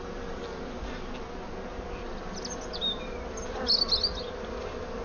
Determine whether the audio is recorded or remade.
recorded